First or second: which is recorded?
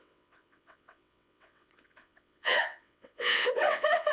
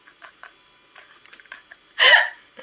second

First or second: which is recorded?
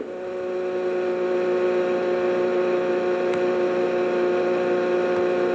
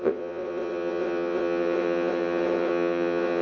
first